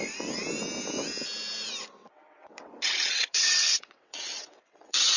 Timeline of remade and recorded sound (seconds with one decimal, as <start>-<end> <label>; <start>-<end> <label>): 0.0-2.0 recorded; 2.0-5.2 remade